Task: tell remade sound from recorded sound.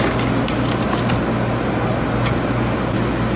recorded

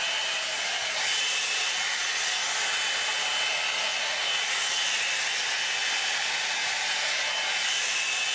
recorded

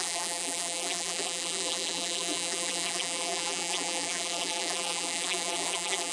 remade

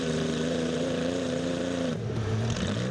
remade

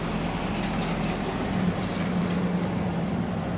recorded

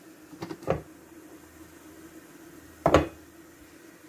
recorded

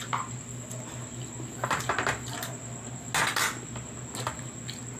recorded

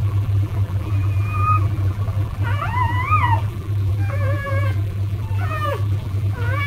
remade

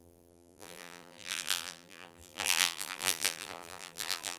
remade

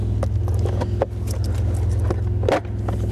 recorded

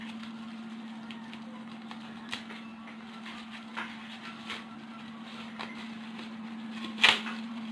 remade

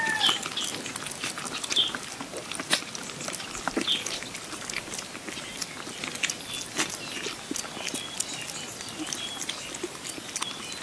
recorded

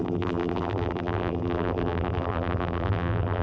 remade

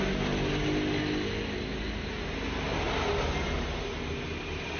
recorded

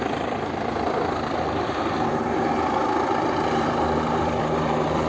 remade